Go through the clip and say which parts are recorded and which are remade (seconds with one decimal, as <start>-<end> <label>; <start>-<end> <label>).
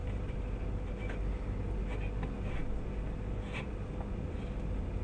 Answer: 0.0-5.0 recorded